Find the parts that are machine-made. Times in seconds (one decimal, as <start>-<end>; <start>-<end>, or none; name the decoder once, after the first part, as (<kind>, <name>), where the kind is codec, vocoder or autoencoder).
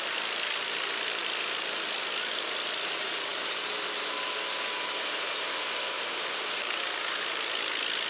none